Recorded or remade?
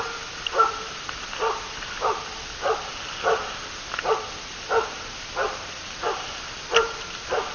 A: recorded